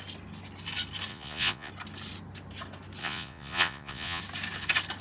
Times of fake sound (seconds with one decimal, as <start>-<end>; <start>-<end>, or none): 1.1-1.7; 3.0-4.2